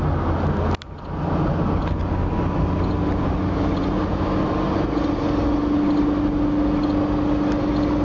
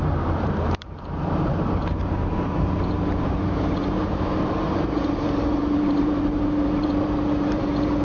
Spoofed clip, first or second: second